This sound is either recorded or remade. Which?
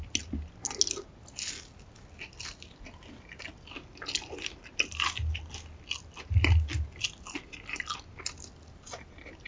recorded